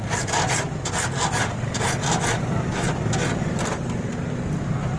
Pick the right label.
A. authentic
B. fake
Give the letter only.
A